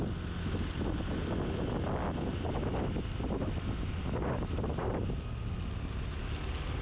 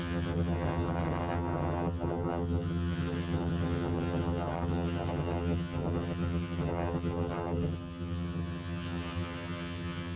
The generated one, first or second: second